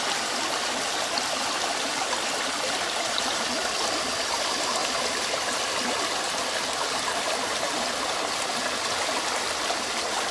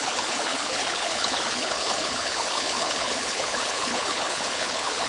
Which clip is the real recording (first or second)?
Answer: first